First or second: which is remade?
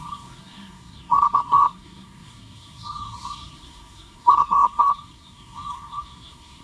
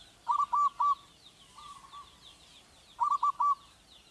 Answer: first